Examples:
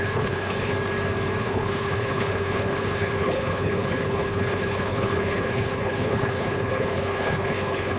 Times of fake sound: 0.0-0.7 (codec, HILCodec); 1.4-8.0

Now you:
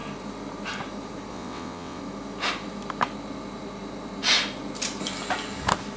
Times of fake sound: 1.3-2.0 (vocoder, WaveNeXt)

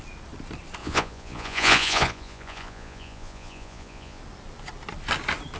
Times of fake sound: 0.8-4.2 (vocoder, Vocos)

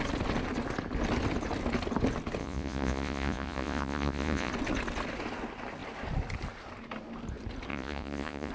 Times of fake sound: 2.4-4.5 (vocoder, Vocos); 7.7-8.5

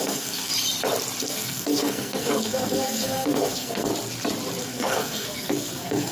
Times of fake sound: 0.0-0.5 (codec, SNAC); 1.2-3.9; 4.6-6.1

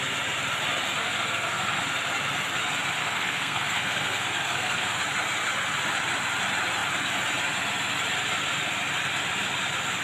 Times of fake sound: 1.0-1.8 (codec, SNAC); 3.0-5.0

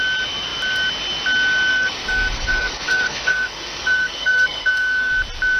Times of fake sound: 1.7-5.1 (codec, SNAC)